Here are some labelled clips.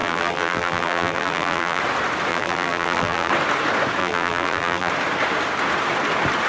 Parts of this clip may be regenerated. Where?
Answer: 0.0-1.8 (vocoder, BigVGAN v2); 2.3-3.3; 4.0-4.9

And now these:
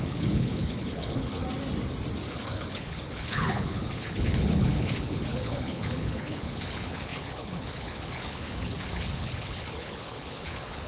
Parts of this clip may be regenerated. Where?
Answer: 0.0-1.4 (codec, HILCodec); 2.3-10.9

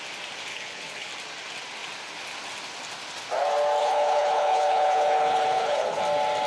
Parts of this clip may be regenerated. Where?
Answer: 0.5-1.1 (codec, HILCodec); 3.8-6.0

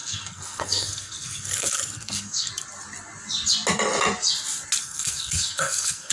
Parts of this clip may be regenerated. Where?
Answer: 0.0-2.5 (codec, SNAC); 4.8-6.1

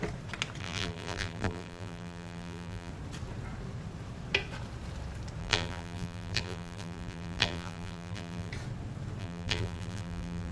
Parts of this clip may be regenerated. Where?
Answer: 0.6-2.9 (vocoder, BigVGAN v2); 5.4-8.5; 9.2-10.5